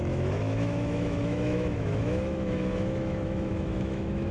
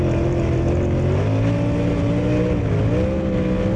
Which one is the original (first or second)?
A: second